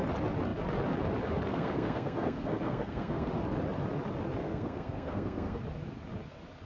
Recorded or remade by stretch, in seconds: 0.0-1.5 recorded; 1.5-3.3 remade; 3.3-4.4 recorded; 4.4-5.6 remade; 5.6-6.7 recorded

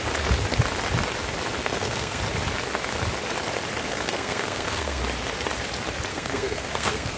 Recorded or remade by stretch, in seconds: 0.0-1.6 recorded; 1.6-2.2 remade; 2.2-3.8 recorded; 3.8-5.0 remade; 5.0-6.1 recorded; 6.1-7.2 remade

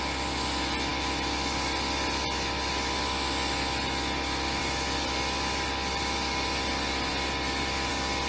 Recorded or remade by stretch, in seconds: 0.0-8.3 recorded

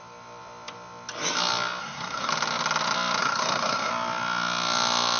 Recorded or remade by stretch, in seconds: 0.0-1.8 recorded; 1.8-2.3 remade; 2.3-3.2 recorded; 3.2-3.9 remade; 3.9-5.2 recorded

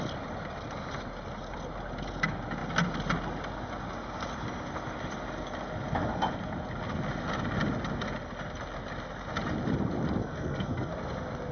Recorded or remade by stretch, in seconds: 0.0-10.2 recorded; 10.2-10.9 remade; 10.9-11.5 recorded

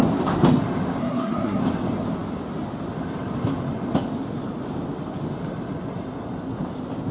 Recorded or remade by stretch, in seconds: 0.0-1.0 recorded; 1.0-1.6 remade; 1.6-7.1 recorded